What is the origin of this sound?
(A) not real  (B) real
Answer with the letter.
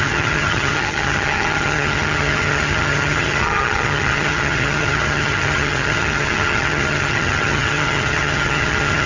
A